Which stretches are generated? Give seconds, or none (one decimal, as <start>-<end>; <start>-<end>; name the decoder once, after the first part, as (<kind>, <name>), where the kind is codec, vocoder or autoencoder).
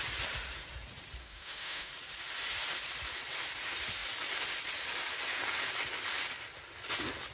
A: 1.2-1.9 (autoencoder, DAC-VAE)